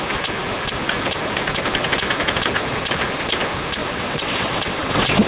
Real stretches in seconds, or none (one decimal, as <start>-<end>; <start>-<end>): 0.0-3.8